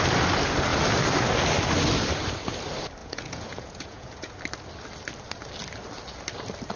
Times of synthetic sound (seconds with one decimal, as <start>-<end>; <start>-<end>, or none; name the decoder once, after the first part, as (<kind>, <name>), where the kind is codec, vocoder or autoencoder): 3.0-4.3 (vocoder, Vocos)